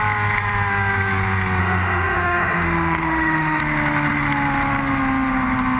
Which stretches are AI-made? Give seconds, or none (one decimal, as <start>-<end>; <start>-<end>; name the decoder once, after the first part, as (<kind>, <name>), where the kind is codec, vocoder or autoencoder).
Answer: 1.6-3.6 (autoencoder, DAC-VAE)